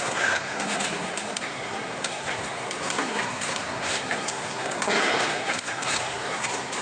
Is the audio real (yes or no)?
no